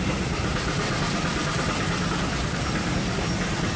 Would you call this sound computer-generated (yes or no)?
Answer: yes